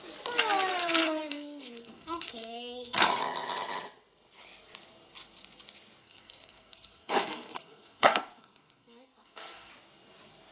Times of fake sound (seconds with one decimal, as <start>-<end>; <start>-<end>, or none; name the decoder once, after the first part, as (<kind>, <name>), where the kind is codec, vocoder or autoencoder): 0.7-3.1 (codec, SNAC); 6.0-9.7